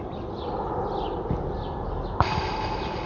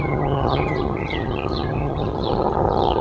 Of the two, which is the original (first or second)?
first